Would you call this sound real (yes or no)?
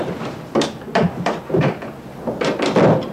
no